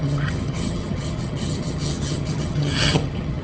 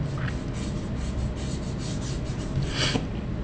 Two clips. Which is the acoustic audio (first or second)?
second